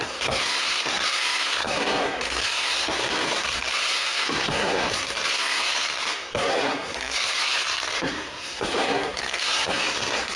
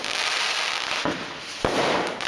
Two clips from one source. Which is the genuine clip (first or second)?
second